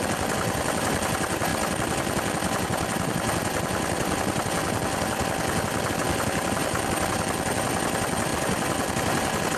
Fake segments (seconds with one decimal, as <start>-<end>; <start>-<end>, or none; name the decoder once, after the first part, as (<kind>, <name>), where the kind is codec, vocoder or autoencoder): none